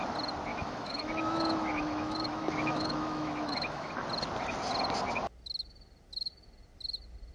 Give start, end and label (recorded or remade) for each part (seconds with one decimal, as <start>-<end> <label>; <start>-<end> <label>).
0.0-0.5 recorded; 0.5-3.9 remade; 3.9-7.3 recorded